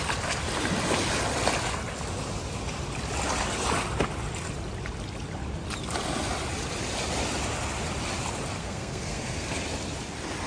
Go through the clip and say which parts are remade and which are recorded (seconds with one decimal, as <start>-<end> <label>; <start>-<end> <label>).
0.0-8.6 recorded; 8.6-9.6 remade; 9.6-10.5 recorded